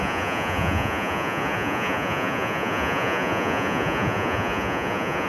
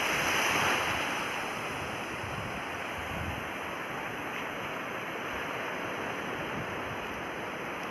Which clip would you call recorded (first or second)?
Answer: second